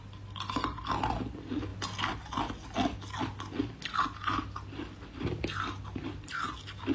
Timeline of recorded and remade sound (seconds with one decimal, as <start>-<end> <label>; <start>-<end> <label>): 0.0-6.9 recorded